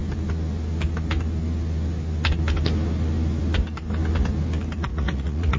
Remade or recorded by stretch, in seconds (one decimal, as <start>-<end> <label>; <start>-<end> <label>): 0.0-4.9 recorded; 4.9-5.6 remade